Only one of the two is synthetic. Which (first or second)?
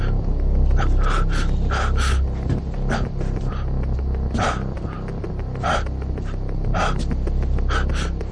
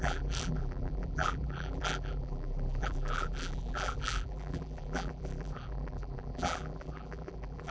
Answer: second